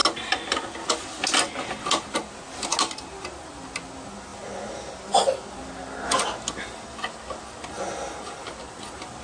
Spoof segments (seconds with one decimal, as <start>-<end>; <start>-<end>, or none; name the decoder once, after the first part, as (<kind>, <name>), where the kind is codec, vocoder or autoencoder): none